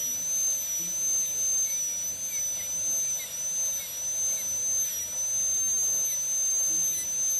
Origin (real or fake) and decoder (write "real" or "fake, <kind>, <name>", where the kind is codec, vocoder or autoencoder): real